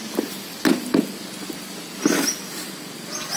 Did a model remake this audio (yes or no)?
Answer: no